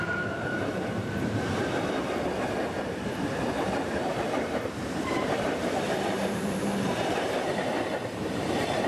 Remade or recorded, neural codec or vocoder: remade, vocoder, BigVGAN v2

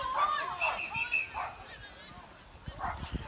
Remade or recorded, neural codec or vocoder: recorded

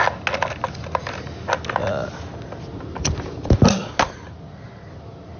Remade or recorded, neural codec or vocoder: recorded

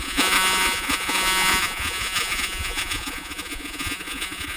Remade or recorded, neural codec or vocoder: remade, vocoder, Vocos